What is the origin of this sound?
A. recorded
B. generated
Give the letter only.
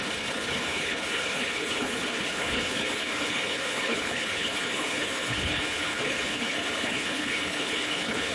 B